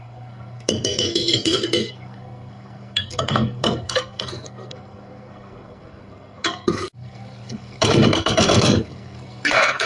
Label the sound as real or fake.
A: fake